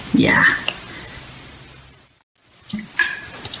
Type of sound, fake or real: real